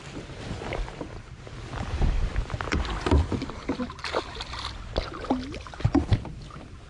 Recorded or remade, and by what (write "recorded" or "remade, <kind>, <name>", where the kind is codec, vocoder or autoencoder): recorded